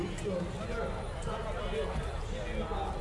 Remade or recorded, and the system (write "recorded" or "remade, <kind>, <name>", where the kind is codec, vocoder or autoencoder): recorded